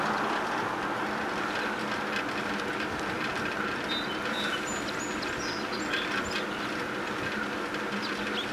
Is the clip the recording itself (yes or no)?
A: yes